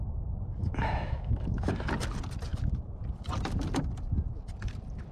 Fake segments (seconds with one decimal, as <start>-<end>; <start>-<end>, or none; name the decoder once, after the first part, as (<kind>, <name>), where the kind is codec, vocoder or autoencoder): 0.6-1.7 (autoencoder, DAC-VAE)